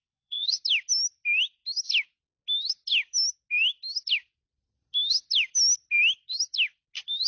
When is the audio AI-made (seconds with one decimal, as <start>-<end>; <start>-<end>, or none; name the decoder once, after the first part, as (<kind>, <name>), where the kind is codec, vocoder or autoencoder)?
0.0-0.6 (vocoder, Vocos)